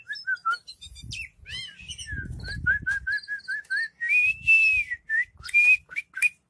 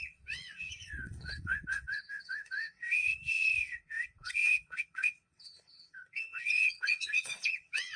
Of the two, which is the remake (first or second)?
second